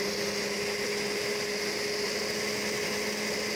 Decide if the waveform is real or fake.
real